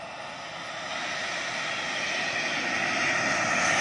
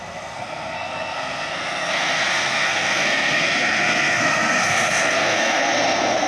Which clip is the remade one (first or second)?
second